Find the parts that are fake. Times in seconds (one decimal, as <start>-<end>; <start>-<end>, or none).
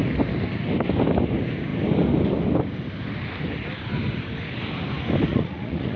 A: 5.3-6.0